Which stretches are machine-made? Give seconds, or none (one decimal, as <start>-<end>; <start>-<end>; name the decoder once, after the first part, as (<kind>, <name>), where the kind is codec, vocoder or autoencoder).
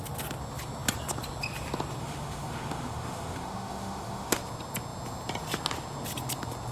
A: 2.0-4.4 (autoencoder, DAC-VAE)